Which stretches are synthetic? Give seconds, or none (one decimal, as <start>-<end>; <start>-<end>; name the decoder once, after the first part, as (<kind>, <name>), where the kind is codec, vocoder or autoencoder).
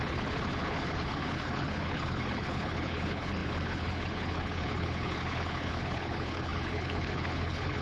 0.0-7.8 (codec, HILCodec)